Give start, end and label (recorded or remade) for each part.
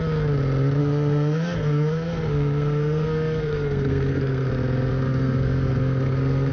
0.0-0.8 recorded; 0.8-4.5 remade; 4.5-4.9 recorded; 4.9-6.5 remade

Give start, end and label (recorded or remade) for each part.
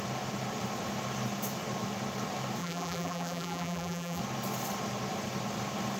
0.0-2.6 recorded; 2.6-4.2 remade; 4.2-6.0 recorded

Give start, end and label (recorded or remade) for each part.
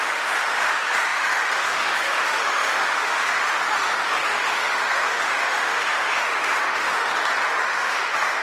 0.0-7.1 remade; 7.1-7.6 recorded; 7.6-8.4 remade